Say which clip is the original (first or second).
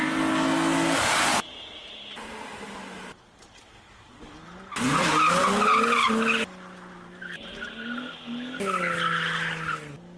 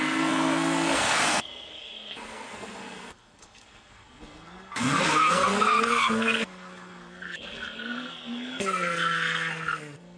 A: first